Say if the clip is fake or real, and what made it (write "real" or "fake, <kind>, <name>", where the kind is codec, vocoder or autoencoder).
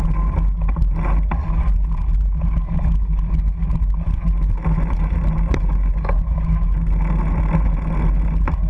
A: real